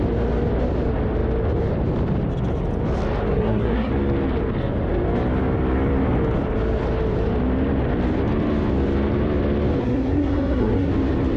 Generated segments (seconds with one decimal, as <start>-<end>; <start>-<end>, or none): 3.3-3.9; 9.8-10.9

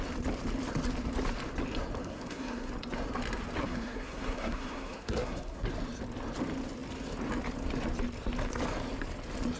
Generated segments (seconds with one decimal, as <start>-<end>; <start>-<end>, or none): 2.0-2.7; 3.6-5.7

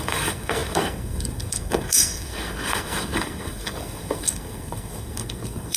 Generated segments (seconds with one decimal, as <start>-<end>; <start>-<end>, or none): 0.0-5.8

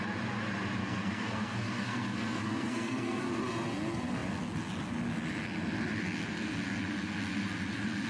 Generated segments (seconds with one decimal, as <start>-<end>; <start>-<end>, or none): 0.8-3.3

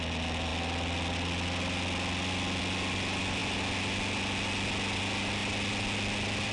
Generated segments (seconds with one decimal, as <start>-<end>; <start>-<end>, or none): none